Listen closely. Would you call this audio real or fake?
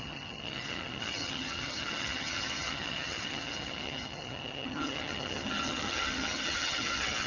fake